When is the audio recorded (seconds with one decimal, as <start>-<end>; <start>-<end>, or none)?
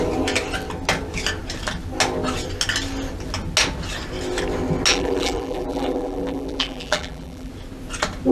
0.0-4.9; 7.5-8.3